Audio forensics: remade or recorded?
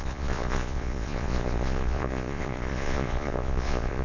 remade